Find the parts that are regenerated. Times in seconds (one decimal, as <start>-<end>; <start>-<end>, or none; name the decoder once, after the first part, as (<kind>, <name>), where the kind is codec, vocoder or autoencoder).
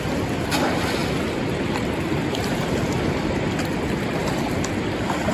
1.0-3.8 (vocoder, BigVGAN v2)